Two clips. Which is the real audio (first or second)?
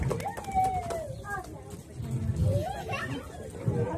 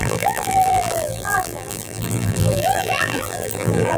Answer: first